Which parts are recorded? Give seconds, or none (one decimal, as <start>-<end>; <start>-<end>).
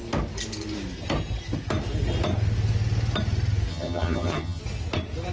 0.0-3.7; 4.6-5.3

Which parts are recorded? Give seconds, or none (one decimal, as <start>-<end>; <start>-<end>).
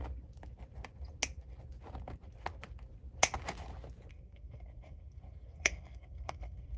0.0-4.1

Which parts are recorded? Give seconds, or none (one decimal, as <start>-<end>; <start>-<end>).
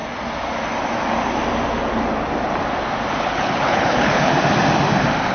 0.0-3.1; 4.3-5.3